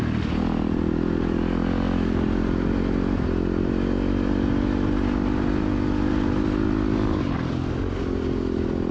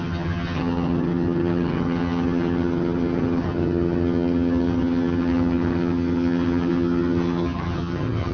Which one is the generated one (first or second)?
second